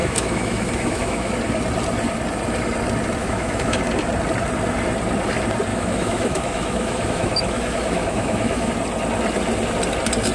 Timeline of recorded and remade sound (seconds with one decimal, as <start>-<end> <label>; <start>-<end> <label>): 0.0-1.3 remade; 1.3-3.2 recorded; 3.2-3.8 remade; 3.8-5.7 recorded; 5.7-8.7 remade; 8.7-10.3 recorded